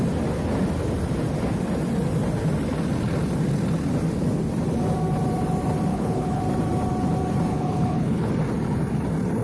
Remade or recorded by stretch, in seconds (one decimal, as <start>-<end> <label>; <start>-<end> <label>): 0.0-5.9 recorded; 5.9-6.4 remade; 6.4-7.5 recorded; 7.5-8.3 remade; 8.3-9.4 recorded